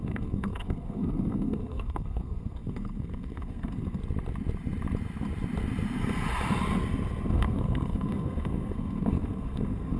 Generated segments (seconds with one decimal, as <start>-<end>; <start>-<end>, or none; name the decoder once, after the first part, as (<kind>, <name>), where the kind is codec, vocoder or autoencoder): 0.0-4.0 (codec, SNAC); 7.3-10.0